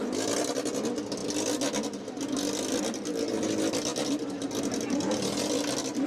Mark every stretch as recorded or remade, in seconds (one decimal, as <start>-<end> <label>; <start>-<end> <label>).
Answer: 0.0-6.1 recorded